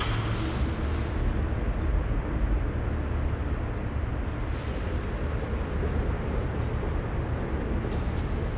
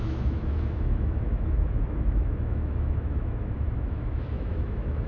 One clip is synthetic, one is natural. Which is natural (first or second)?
first